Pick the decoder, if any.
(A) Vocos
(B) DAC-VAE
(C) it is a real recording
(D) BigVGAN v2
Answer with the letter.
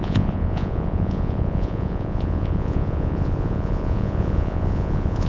A